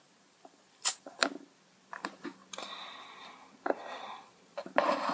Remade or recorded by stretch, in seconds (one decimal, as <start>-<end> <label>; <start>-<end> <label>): 0.0-1.2 remade; 1.2-1.9 recorded; 1.9-2.4 remade; 2.4-4.1 recorded; 4.1-5.1 remade